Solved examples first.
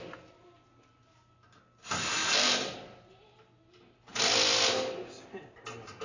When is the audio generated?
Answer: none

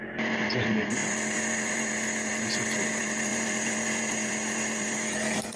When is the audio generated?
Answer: 0.0-2.3; 2.9-5.6

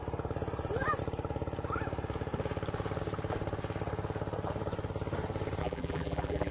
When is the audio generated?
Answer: 5.6-6.5

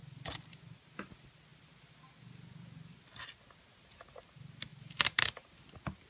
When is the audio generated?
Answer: 4.7-5.4

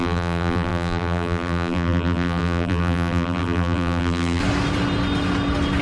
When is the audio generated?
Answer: 0.0-4.4

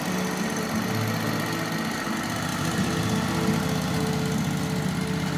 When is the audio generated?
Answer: none

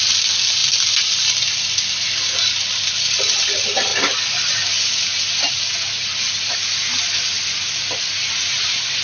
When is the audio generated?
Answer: 0.6-3.5; 3.9-4.9; 6.2-8.3

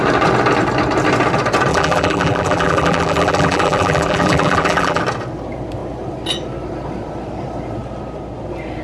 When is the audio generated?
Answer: 1.7-5.0